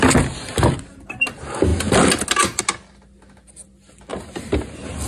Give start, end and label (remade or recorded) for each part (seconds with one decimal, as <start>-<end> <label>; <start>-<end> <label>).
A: 0.0-5.1 recorded